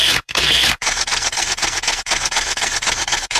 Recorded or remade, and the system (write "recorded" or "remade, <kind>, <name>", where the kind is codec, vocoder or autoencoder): remade, codec, SNAC